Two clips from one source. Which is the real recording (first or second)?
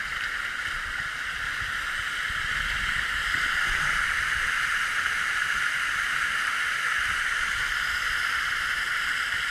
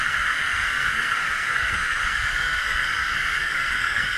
first